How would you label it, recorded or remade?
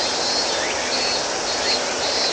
recorded